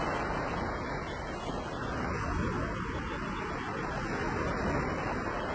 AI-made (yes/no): no